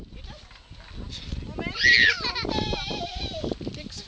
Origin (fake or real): real